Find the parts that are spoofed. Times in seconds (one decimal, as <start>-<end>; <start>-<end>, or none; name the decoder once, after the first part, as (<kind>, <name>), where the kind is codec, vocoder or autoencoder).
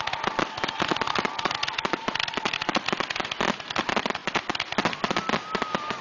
none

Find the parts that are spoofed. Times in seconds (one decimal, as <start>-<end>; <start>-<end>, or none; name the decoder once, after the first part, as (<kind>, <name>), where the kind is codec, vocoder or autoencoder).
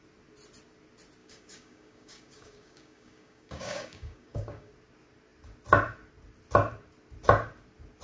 1.2-4.7 (codec, DAC)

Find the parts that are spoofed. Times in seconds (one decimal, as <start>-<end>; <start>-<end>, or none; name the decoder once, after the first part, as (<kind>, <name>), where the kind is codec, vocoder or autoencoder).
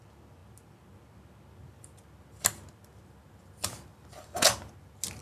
3.9-4.4 (vocoder, BigVGAN v2)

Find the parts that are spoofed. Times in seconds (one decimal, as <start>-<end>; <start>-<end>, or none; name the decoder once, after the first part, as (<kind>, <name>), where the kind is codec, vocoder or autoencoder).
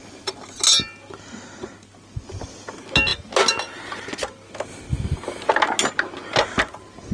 none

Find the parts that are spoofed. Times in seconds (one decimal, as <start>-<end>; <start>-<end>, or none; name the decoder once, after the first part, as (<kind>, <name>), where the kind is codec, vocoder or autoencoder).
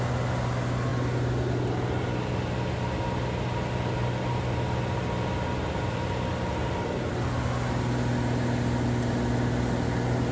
none